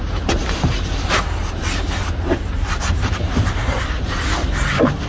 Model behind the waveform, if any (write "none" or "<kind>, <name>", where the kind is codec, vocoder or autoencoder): vocoder, BigVGAN v2